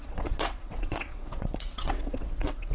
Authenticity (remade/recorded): remade